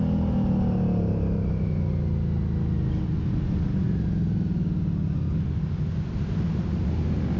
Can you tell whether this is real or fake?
real